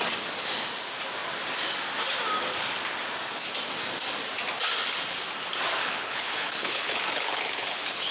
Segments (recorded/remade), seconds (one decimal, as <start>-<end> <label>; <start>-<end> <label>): 0.0-5.8 recorded; 5.8-8.1 remade